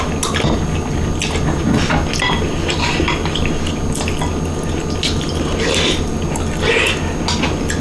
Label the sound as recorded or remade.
recorded